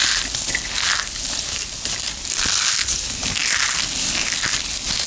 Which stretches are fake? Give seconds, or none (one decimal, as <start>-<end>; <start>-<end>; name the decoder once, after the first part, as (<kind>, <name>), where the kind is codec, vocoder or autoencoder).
none